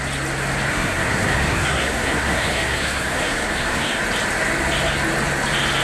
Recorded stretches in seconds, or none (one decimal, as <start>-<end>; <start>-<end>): 0.0-0.7; 4.0-5.8